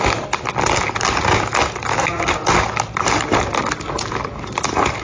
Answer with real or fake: real